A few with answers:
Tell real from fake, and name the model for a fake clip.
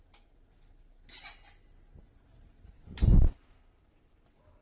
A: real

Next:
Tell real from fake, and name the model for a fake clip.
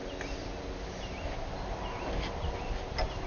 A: real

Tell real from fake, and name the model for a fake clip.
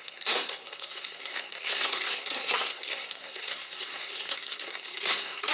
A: fake, codec, SNAC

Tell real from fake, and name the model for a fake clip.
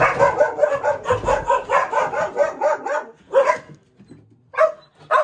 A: real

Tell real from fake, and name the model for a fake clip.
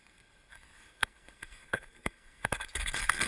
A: fake, codec, SNAC